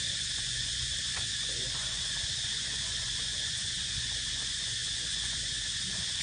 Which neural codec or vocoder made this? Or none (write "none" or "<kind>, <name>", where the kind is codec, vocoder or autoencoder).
vocoder, Vocos